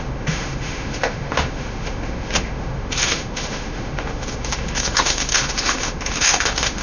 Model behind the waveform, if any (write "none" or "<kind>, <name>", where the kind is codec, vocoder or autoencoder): autoencoder, DAC-VAE